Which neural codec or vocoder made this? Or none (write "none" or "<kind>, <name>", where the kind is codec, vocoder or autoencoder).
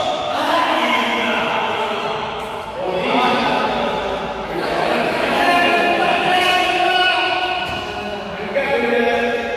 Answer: autoencoder, DAC-VAE